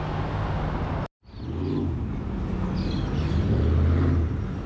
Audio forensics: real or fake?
real